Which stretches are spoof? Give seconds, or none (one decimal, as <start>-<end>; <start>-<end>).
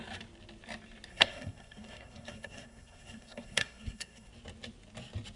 1.1-4.3